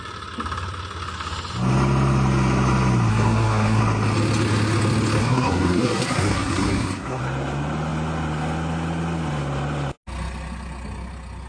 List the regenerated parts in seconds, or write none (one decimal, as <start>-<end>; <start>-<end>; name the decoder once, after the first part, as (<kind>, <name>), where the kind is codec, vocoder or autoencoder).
3.1-3.8 (codec, SNAC); 5.2-7.2